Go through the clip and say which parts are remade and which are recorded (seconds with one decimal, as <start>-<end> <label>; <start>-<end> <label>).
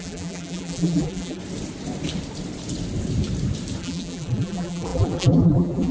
0.0-1.4 remade; 1.4-3.8 recorded; 3.8-5.9 remade